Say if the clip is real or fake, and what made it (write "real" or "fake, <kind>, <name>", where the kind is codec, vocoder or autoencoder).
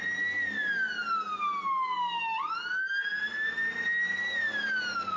real